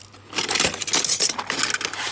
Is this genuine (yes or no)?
yes